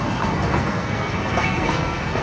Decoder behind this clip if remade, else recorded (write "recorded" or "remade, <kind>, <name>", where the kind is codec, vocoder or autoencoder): remade, codec, SNAC